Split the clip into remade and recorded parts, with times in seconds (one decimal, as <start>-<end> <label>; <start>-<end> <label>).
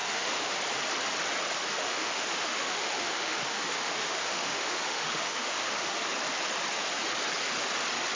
0.0-0.6 remade; 0.6-1.7 recorded; 1.7-6.1 remade; 6.1-8.2 recorded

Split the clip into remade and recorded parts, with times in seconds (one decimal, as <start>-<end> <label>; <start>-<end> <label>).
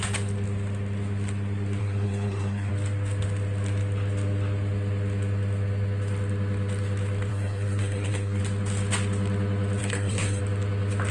0.0-1.8 recorded; 1.8-2.7 remade; 2.7-7.3 recorded; 7.3-8.4 remade; 8.4-9.8 recorded; 9.8-10.4 remade; 10.4-11.1 recorded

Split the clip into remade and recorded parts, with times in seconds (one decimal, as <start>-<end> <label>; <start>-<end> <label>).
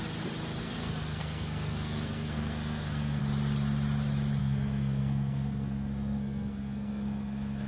0.0-0.6 recorded; 0.6-3.2 remade; 3.2-4.4 recorded; 4.4-7.7 remade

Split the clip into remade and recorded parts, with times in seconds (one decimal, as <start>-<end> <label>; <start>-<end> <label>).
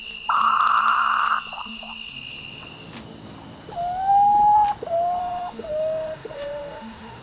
0.0-5.2 recorded; 5.2-7.2 remade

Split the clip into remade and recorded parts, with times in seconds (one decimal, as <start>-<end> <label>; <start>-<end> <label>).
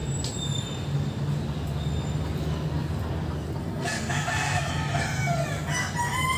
0.0-3.6 recorded; 3.6-4.7 remade; 4.7-6.4 recorded